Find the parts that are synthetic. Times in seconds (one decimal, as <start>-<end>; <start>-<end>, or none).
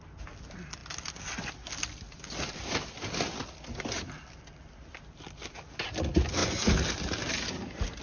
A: none